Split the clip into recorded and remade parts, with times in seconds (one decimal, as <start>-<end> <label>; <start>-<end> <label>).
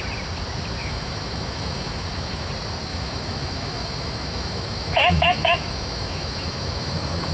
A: 0.0-0.8 recorded; 0.8-2.5 remade; 2.5-2.9 recorded; 2.9-7.3 remade